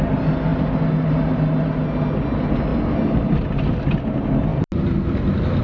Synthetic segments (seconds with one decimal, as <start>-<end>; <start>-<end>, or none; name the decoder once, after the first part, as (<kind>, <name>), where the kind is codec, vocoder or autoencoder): none

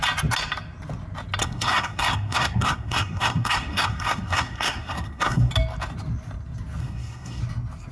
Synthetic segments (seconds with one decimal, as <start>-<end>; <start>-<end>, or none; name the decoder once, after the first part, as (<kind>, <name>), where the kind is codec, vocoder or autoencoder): 1.4-5.5 (codec, SNAC); 6.8-7.4

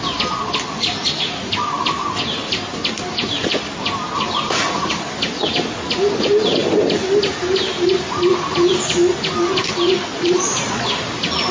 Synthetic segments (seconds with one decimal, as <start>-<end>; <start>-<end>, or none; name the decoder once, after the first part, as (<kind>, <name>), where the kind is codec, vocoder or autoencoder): 10.1-10.9 (vocoder, Vocos)

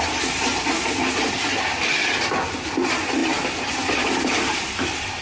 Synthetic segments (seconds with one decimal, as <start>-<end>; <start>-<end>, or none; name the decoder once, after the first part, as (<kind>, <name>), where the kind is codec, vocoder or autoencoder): none

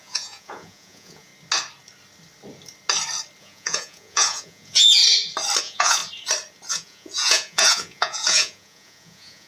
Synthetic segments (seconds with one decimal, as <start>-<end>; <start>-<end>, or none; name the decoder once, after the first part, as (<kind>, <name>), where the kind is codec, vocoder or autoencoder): 0.0-1.3 (vocoder, Vocos); 3.4-5.0; 5.6-6.0; 6.7-9.5

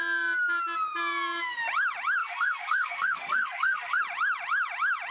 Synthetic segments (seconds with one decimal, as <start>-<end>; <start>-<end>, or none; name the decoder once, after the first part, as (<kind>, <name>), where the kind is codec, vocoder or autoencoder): 2.2-4.0 (codec, SNAC)

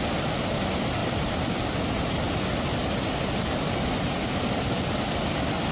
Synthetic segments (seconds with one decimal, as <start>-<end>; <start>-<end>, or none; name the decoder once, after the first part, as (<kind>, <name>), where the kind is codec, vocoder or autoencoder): none

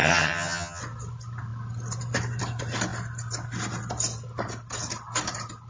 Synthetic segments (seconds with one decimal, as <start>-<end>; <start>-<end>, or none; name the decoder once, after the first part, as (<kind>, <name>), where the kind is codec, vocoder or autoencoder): 0.0-0.8 (vocoder, HiFi-GAN)